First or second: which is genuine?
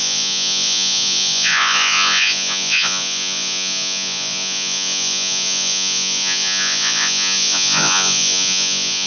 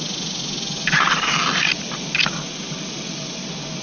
second